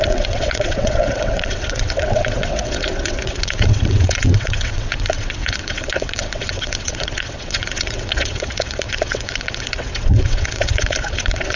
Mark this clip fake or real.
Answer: fake